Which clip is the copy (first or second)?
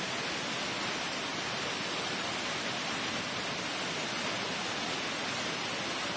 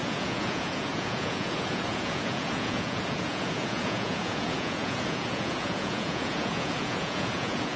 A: second